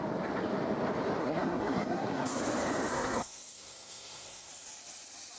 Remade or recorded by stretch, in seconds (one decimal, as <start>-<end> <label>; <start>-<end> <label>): 0.0-1.2 recorded; 1.2-2.4 remade; 2.4-2.9 recorded; 2.9-4.5 remade; 4.5-5.4 recorded

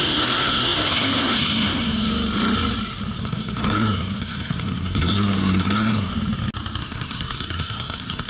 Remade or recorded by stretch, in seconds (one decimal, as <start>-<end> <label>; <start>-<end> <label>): 0.0-2.1 remade; 2.1-3.2 recorded; 3.2-6.1 remade; 6.1-6.8 recorded; 6.8-8.3 remade